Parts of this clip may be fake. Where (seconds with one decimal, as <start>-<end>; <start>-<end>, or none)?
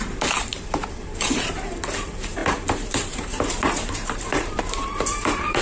0.0-5.6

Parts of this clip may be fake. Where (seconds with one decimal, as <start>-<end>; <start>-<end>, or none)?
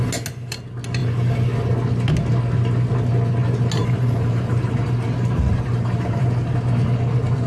3.8-6.5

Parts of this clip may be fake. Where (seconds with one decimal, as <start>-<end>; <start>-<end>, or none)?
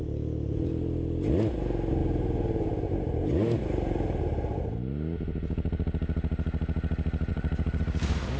2.0-4.2; 7.3-7.8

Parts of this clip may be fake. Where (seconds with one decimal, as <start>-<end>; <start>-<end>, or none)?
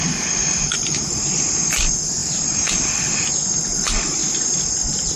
0.4-1.0; 2.2-3.3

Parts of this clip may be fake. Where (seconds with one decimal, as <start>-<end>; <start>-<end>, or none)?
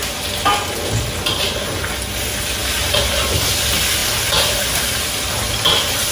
none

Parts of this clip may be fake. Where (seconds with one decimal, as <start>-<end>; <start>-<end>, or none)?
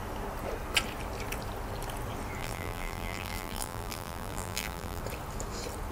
2.4-5.0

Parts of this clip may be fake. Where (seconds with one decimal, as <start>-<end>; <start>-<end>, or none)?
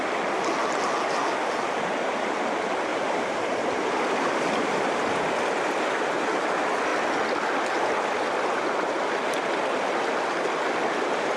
2.9-5.3